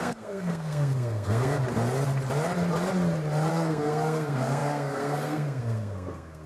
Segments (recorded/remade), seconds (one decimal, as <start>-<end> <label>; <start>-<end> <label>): 0.0-1.6 remade; 1.6-3.5 recorded; 3.5-6.5 remade